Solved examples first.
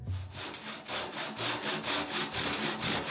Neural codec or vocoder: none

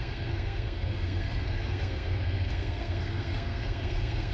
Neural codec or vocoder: codec, SNAC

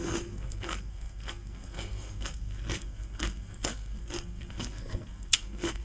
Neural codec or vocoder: codec, SNAC